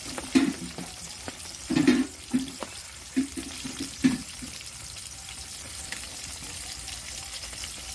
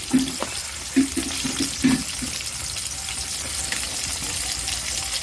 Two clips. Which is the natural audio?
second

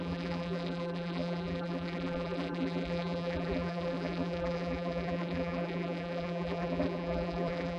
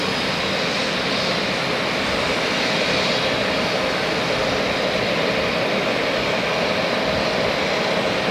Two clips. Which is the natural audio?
second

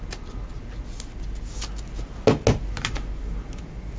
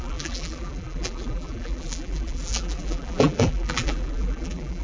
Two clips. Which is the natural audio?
first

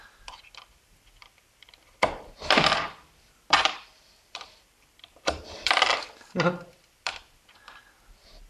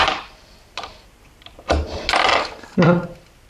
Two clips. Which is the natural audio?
second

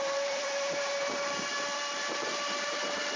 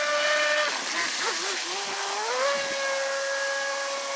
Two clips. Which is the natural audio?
second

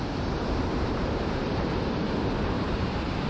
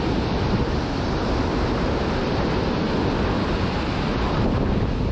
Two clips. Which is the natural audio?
second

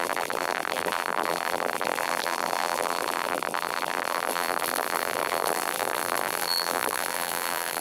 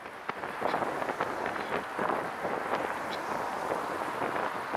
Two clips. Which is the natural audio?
second